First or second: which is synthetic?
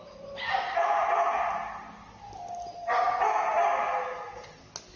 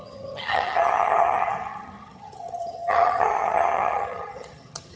second